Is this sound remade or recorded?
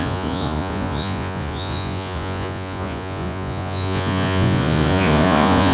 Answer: remade